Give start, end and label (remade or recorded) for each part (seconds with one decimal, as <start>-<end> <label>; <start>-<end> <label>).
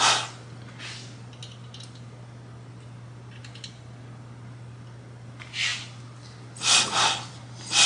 0.0-7.9 recorded